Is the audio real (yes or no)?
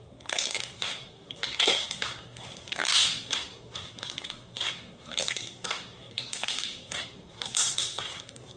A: no